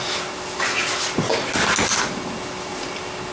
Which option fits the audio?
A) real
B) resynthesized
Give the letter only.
A